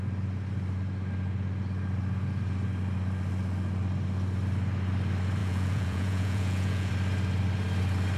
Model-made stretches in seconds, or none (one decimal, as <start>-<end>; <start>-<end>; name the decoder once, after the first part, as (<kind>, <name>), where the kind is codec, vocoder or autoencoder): 5.4-6.9 (vocoder, Vocos)